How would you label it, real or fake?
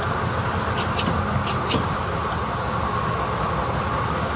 real